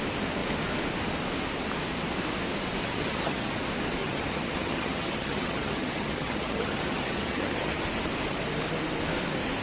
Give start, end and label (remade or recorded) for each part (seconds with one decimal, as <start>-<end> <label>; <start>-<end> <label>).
0.0-2.8 recorded; 2.8-3.6 remade; 3.6-4.0 recorded; 4.0-7.8 remade; 7.8-9.6 recorded